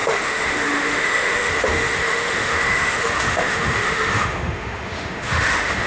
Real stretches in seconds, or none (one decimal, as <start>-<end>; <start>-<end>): none